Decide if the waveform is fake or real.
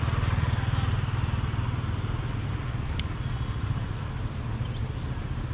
real